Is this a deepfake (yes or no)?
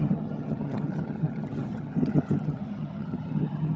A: yes